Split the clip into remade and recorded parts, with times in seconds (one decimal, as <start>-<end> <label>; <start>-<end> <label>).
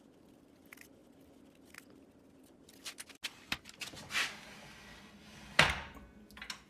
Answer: 0.0-6.7 recorded